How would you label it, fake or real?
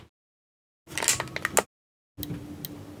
real